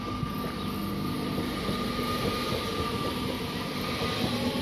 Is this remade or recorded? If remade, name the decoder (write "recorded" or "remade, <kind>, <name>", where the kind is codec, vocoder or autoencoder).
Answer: recorded